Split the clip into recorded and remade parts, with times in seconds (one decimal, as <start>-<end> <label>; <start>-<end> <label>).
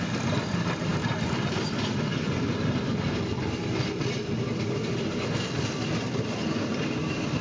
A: 0.0-7.4 recorded